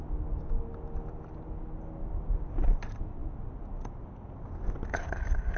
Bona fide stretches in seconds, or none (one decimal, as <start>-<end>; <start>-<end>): 0.0-5.6